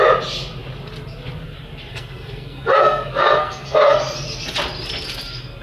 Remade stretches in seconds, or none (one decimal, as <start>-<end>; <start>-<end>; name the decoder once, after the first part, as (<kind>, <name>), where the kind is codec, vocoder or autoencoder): 1.9-4.0 (codec, SNAC)